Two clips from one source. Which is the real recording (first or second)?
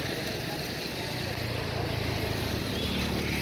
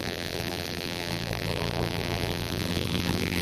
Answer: first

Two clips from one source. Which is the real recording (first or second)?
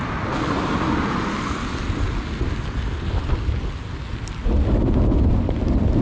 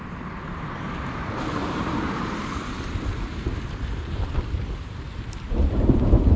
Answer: first